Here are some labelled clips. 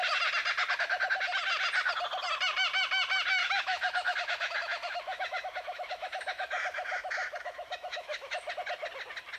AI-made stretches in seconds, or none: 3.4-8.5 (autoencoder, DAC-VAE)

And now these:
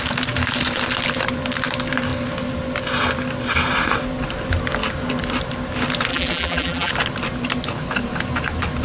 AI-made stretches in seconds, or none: 6.1-6.9 (vocoder, BigVGAN v2)

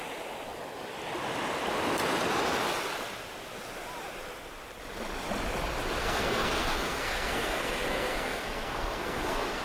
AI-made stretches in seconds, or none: 6.0-9.6 (codec, SNAC)

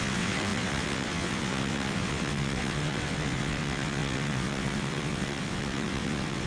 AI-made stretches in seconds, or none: 0.0-6.5 (vocoder, WaveNeXt)

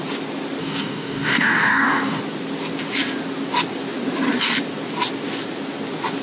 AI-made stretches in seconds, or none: 0.6-2.2 (codec, DAC)